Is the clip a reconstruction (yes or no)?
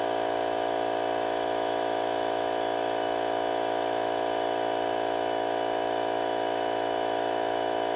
yes